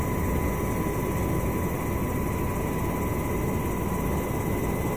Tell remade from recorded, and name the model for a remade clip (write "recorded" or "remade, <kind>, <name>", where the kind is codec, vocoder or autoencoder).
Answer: recorded